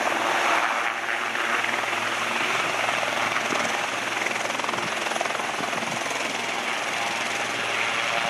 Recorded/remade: recorded